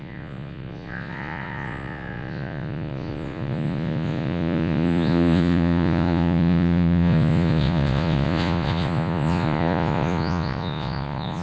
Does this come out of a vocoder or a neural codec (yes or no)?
yes